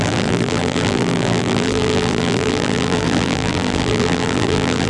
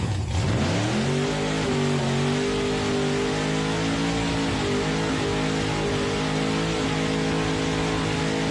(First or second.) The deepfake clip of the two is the first